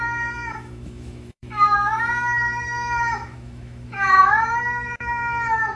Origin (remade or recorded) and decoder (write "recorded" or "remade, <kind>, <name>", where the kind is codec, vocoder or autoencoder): remade, autoencoder, DAC-VAE